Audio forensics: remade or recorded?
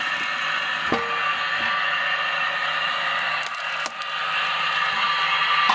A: recorded